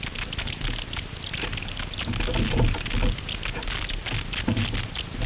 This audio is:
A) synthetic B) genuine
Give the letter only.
B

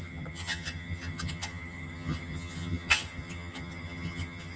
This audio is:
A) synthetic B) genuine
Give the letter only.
A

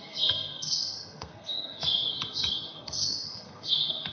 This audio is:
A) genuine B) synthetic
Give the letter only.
B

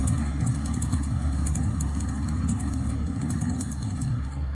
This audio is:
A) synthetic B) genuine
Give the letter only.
A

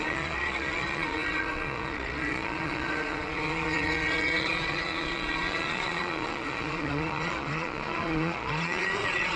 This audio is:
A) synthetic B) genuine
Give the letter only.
A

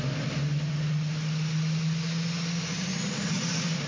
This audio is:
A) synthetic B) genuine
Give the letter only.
B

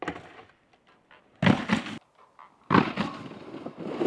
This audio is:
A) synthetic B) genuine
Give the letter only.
B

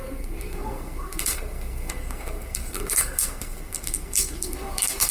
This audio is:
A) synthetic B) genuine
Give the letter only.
A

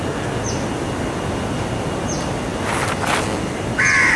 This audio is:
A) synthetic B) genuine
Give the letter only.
B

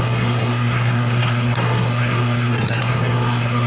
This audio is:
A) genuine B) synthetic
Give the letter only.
B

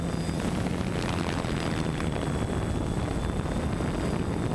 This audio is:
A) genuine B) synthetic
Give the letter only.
A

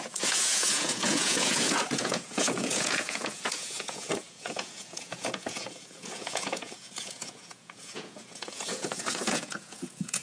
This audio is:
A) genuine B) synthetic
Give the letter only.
B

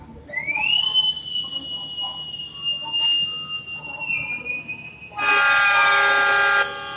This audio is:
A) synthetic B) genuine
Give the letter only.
B